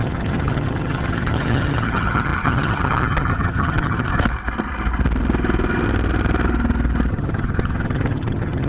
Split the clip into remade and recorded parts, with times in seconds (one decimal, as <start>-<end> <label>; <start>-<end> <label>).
0.0-4.1 remade; 4.1-7.1 recorded; 7.1-8.7 remade